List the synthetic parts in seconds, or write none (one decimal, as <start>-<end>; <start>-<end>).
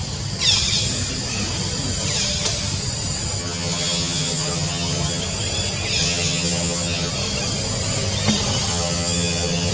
3.4-5.2; 6.0-7.1; 8.7-9.7